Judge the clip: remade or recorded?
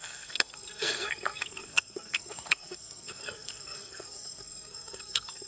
remade